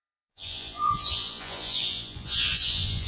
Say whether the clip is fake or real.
fake